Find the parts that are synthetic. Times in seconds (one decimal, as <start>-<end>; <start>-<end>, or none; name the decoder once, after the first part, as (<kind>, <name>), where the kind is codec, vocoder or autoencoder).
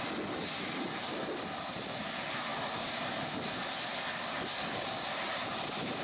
none